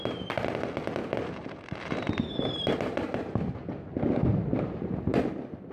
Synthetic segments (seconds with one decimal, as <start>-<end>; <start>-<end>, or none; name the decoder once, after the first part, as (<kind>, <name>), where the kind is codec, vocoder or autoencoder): 1.0-3.7 (vocoder, BigVGAN v2); 4.3-5.2